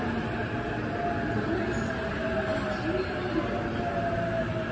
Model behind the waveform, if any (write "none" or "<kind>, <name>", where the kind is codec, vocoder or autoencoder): none